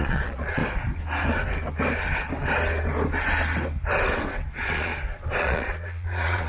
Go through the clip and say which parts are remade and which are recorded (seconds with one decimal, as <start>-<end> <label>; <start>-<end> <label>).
0.0-0.6 remade; 0.6-4.5 recorded; 4.5-4.9 remade; 4.9-5.4 recorded; 5.4-6.5 remade